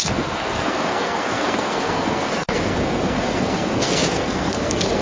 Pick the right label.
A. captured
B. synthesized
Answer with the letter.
B